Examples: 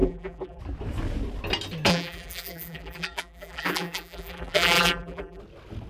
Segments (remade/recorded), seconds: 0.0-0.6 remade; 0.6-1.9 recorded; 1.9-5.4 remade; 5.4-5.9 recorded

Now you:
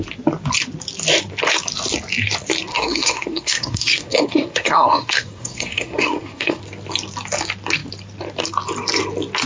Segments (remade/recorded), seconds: 0.0-2.7 recorded; 2.7-6.6 remade; 6.6-9.5 recorded

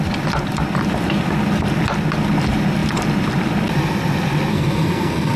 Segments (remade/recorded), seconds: 0.0-4.5 recorded; 4.5-5.4 remade